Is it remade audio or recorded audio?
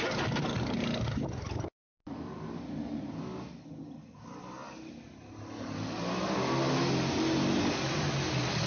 recorded